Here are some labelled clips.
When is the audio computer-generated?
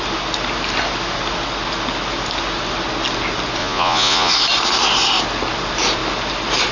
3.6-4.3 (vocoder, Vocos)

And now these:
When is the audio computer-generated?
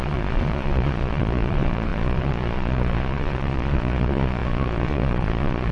0.0-5.7 (vocoder, Vocos)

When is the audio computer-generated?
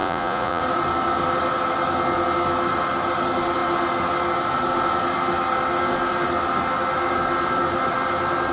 0.0-0.6 (vocoder, Vocos)